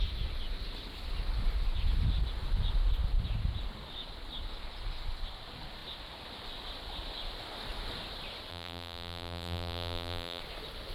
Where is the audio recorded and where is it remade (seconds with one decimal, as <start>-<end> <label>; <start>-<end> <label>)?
0.0-8.5 recorded; 8.5-10.4 remade; 10.4-10.9 recorded